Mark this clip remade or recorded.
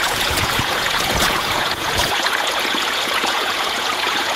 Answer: remade